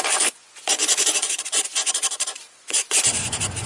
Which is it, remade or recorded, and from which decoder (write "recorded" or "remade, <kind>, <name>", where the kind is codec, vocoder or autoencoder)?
remade, vocoder, Vocos